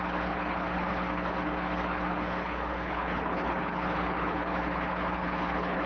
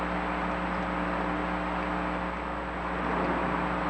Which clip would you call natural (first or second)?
second